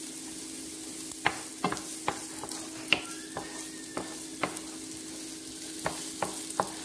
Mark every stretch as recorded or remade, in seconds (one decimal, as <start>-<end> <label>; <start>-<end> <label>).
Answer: 0.0-6.8 recorded